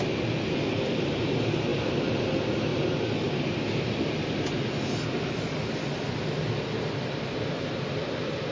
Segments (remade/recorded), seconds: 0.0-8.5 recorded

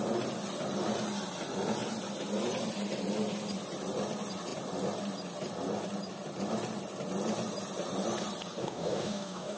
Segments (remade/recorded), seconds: 0.0-8.6 recorded; 8.6-9.6 remade

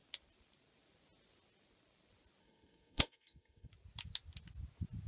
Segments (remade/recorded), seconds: 0.0-2.4 recorded; 2.4-3.7 remade; 3.7-5.1 recorded

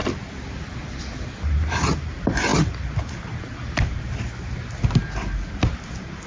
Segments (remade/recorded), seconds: 0.0-6.3 recorded

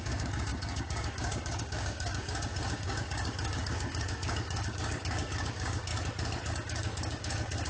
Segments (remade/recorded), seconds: 0.0-5.9 remade; 5.9-6.5 recorded; 6.5-7.7 remade

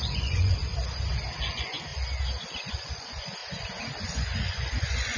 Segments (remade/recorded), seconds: 0.0-0.6 remade; 0.6-1.4 recorded; 1.4-1.9 remade; 1.9-2.7 recorded; 2.7-3.4 remade; 3.4-4.0 recorded; 4.0-5.2 remade

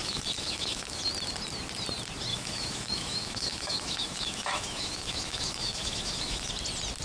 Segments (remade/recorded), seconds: 0.0-1.0 remade; 1.0-2.3 recorded; 2.3-6.5 remade; 6.5-7.0 recorded

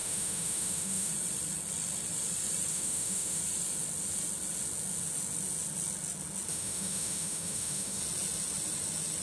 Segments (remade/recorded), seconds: 0.0-1.1 remade; 1.1-2.7 recorded; 2.7-3.4 remade; 3.4-6.5 recorded; 6.5-8.0 remade; 8.0-9.2 recorded